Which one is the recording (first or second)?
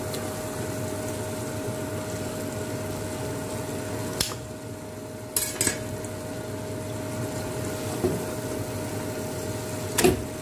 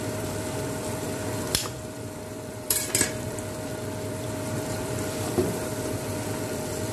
first